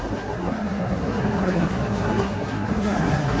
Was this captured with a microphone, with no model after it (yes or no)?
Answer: no